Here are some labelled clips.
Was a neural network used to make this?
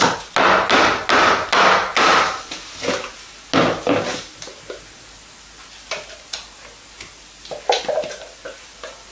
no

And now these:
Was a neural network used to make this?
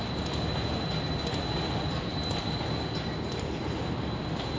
no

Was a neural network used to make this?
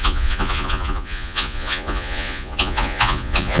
yes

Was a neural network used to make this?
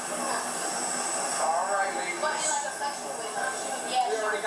no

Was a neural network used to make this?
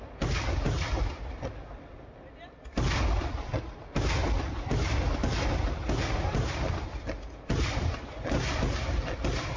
no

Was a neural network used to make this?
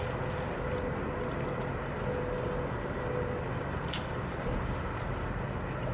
no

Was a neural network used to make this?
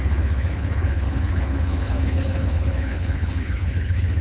yes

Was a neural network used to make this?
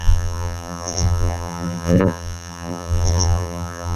yes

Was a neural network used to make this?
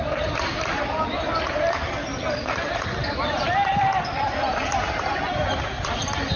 yes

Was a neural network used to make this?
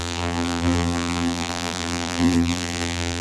yes